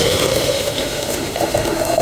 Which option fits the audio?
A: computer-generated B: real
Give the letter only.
A